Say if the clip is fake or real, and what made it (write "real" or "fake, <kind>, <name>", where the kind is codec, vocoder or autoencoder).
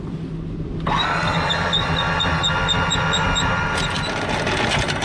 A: real